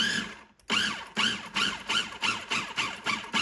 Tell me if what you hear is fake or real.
real